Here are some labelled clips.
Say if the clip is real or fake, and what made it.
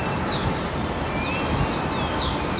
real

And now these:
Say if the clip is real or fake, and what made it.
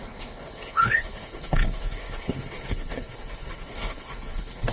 fake, codec, HILCodec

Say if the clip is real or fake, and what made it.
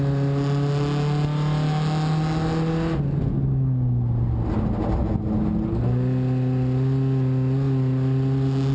real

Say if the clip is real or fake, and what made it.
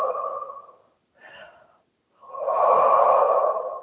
real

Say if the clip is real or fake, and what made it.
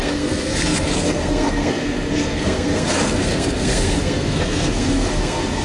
fake, codec, SNAC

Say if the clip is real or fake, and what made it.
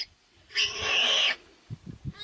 real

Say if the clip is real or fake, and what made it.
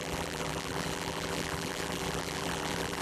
fake, vocoder, BigVGAN v2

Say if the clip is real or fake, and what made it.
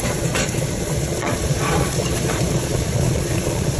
fake, vocoder, Vocos